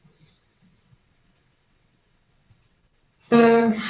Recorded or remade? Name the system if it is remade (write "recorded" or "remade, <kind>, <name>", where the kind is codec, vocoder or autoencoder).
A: remade, vocoder, WaveNeXt